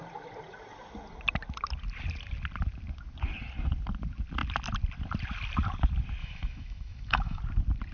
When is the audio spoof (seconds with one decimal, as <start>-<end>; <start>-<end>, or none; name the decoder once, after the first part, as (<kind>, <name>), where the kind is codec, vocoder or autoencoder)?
6.2-7.4 (autoencoder, DAC-VAE)